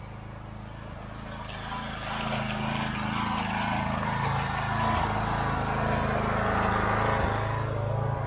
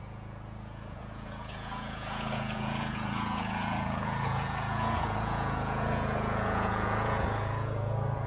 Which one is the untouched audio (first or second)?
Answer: first